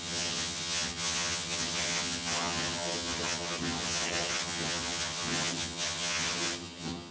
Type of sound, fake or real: fake